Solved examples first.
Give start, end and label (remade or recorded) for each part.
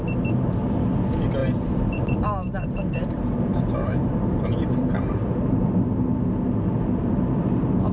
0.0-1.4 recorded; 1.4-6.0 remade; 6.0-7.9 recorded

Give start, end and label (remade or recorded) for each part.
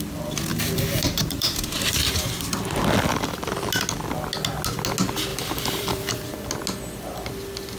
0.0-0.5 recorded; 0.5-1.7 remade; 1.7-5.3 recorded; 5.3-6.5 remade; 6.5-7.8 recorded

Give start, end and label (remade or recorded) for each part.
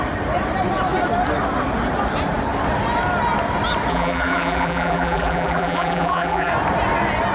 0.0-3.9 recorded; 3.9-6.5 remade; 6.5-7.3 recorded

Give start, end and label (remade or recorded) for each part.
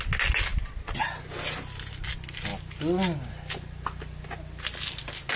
0.0-5.4 recorded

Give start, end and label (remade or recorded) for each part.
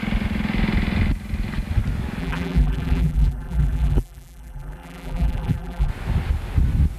0.0-2.2 recorded; 2.2-5.9 remade; 5.9-7.0 recorded